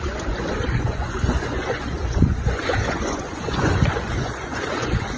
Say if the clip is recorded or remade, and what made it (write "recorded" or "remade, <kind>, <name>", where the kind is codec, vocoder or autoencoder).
remade, vocoder, Vocos